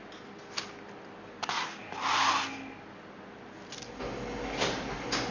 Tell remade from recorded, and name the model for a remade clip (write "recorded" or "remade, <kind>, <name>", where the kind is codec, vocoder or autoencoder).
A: recorded